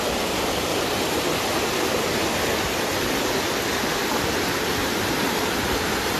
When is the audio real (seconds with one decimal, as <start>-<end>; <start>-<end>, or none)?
0.0-0.7; 1.2-4.8